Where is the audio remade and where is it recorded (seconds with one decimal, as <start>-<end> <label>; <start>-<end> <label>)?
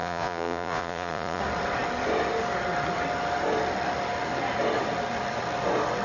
0.0-1.4 remade; 1.4-6.0 recorded